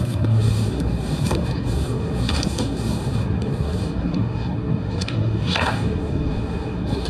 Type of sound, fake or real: fake